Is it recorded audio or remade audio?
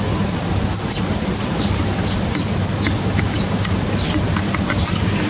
remade